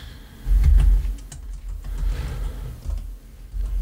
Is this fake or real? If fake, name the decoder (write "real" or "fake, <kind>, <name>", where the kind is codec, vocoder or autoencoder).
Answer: real